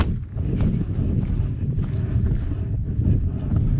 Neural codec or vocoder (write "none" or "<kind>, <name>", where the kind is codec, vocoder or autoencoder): none